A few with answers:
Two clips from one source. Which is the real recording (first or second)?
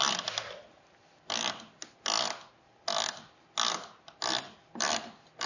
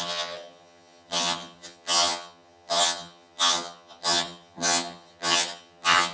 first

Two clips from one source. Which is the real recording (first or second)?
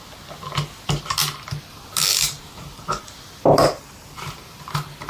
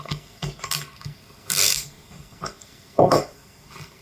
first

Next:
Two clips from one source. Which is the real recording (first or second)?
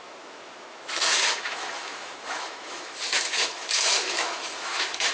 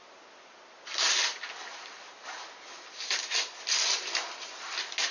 second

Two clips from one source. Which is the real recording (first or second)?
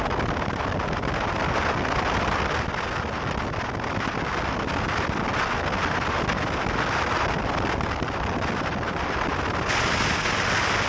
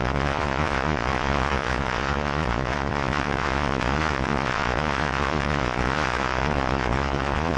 first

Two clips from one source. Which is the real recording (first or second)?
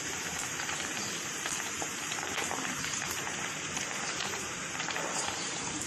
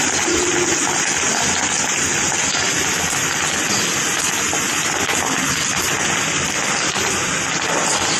second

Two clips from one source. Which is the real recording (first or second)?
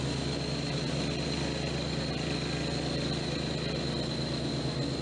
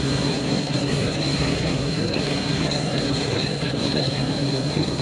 first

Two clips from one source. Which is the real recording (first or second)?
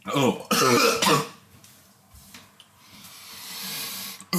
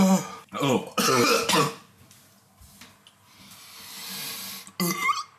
second